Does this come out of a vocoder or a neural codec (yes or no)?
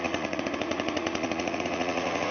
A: yes